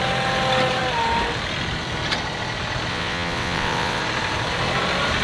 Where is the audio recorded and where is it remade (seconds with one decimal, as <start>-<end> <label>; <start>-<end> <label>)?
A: 0.0-2.9 recorded; 2.9-4.0 remade; 4.0-5.2 recorded

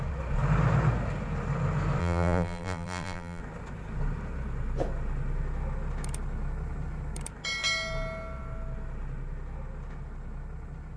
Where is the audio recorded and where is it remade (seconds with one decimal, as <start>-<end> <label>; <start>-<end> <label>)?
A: 0.0-2.0 recorded; 2.0-3.4 remade; 3.4-11.0 recorded

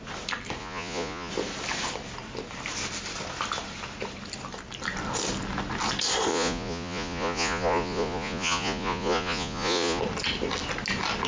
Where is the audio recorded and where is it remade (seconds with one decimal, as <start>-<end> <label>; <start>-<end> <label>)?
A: 0.0-0.6 recorded; 0.6-1.3 remade; 1.3-6.3 recorded; 6.3-10.0 remade; 10.0-11.3 recorded